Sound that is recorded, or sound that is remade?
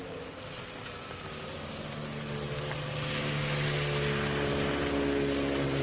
recorded